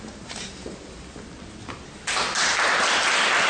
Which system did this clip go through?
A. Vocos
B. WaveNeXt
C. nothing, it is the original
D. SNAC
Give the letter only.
C